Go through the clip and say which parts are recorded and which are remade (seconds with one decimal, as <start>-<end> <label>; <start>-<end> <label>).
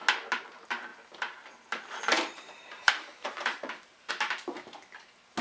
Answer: 0.0-0.9 recorded; 0.9-4.1 remade; 4.1-5.4 recorded